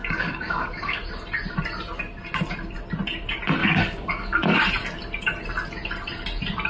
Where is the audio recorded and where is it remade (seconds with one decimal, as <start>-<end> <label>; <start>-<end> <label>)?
0.0-1.0 remade; 1.0-3.6 recorded; 3.6-4.6 remade; 4.6-6.7 recorded